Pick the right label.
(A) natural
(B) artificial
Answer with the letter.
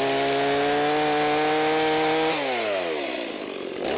A